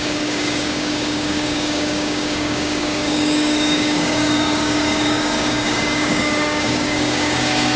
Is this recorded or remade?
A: remade